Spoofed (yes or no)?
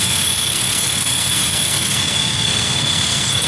yes